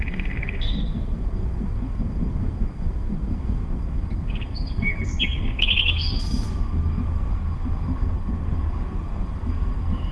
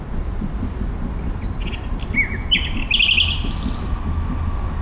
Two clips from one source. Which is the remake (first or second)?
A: first